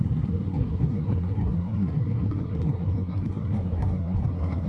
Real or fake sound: fake